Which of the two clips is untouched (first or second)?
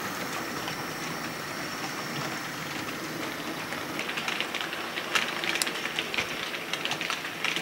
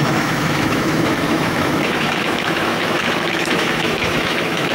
first